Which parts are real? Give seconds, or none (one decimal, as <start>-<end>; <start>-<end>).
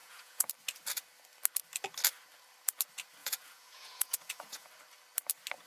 0.5-3.2; 4.7-5.7